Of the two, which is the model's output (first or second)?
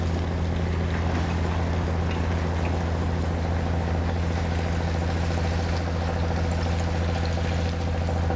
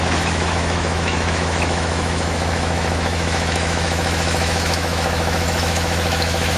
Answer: second